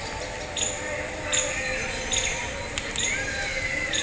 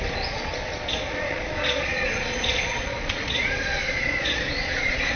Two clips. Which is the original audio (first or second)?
first